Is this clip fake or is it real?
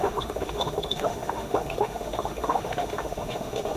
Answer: fake